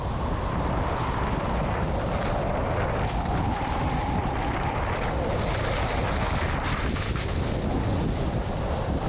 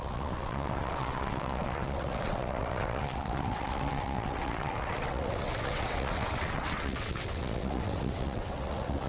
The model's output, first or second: second